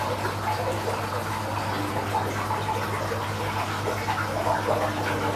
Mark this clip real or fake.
real